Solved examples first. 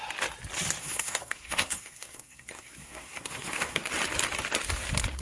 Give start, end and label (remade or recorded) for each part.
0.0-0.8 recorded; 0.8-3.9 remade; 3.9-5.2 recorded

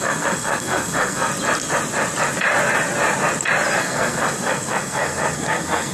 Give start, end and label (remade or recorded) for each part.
0.0-1.3 remade; 1.3-3.8 recorded; 3.8-5.9 remade